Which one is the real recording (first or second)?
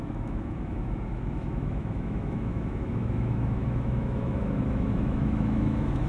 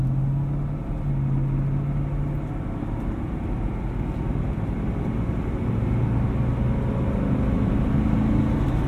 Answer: second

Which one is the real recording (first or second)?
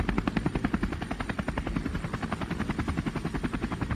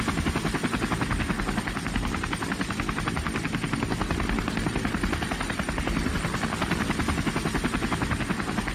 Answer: second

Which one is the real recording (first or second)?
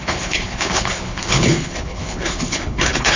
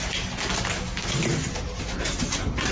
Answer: second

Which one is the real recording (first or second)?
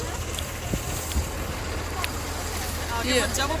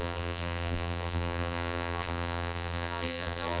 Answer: first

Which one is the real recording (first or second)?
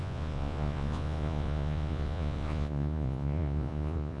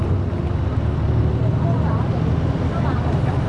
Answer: second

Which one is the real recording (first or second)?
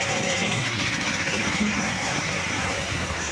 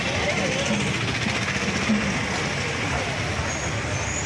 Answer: second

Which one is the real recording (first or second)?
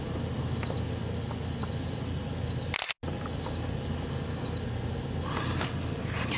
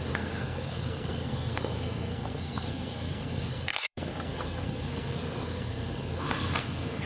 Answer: first